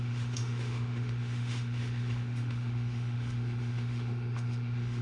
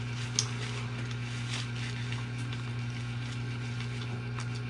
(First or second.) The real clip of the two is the second